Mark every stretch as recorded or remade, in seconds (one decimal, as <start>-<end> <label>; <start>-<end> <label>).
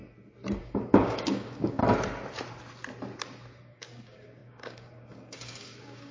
0.0-0.6 recorded; 0.6-1.8 remade; 1.8-3.6 recorded; 3.6-6.1 remade